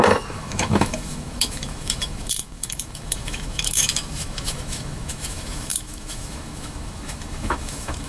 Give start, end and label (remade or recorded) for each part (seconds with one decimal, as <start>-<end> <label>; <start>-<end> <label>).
0.0-8.1 remade